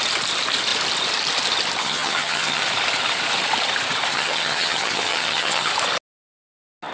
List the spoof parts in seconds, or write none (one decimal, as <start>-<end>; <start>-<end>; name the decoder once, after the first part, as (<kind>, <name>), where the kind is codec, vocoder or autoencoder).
1.8-2.6 (vocoder, HiFi-GAN); 4.1-5.7

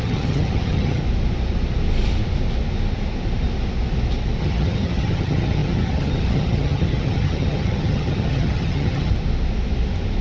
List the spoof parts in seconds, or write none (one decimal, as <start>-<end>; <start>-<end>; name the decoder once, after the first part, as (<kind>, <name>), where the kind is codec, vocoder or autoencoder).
0.0-1.0 (vocoder, HiFi-GAN); 4.4-9.1

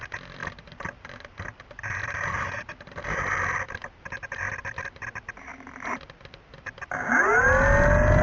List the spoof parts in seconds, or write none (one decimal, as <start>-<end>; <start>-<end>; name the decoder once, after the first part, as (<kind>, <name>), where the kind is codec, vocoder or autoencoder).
none

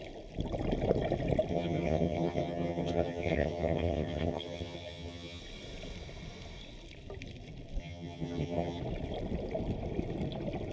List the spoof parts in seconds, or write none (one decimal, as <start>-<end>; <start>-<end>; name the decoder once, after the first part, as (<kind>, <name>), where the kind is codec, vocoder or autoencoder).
1.5-5.4 (vocoder, HiFi-GAN); 7.8-8.8